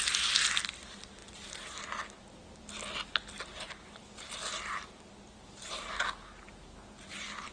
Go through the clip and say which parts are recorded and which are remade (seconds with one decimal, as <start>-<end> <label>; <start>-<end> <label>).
0.0-7.5 recorded